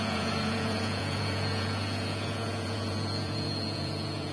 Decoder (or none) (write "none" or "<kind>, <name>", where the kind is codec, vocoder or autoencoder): vocoder, Vocos